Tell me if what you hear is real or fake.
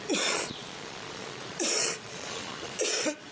fake